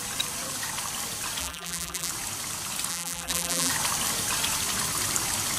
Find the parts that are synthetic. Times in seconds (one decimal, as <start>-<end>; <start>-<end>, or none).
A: 1.4-2.1; 2.9-3.7